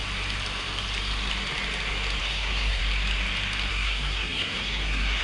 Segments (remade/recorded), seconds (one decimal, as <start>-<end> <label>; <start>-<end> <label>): 0.0-2.2 recorded; 2.2-2.8 remade; 2.8-3.7 recorded; 3.7-5.2 remade